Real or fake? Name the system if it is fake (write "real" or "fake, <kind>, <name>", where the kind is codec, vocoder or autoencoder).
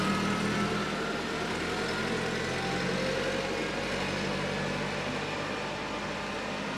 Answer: real